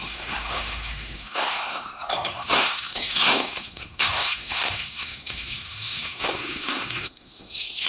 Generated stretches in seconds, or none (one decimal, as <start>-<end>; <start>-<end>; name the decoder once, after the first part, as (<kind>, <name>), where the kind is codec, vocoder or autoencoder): 0.0-7.9 (codec, SNAC)